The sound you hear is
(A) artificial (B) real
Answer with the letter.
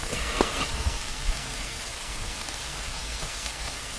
A